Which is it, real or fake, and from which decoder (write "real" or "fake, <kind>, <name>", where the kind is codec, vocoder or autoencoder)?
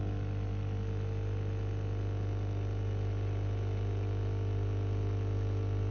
real